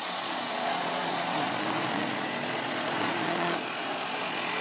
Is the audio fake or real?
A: fake